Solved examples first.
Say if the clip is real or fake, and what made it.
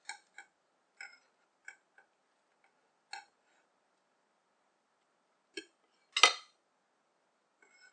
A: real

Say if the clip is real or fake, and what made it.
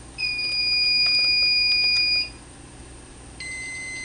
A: real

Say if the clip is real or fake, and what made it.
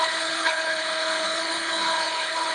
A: fake, codec, HILCodec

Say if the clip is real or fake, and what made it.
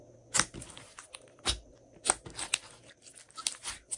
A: real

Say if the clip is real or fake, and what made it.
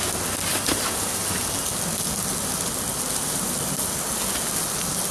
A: real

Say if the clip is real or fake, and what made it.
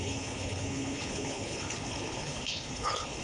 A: fake, codec, HILCodec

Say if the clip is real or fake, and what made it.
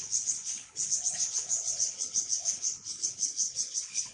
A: fake, codec, HILCodec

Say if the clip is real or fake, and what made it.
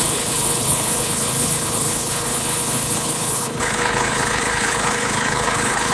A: fake, codec, HILCodec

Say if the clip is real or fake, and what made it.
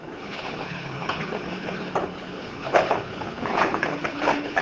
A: fake, codec, HILCodec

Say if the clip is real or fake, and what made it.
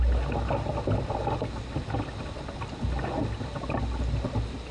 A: real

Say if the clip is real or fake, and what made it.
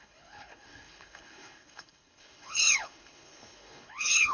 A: fake, codec, HILCodec